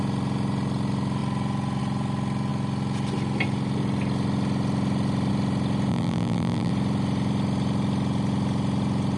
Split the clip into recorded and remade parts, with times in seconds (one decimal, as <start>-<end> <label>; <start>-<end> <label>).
0.0-5.9 recorded; 5.9-6.7 remade; 6.7-9.2 recorded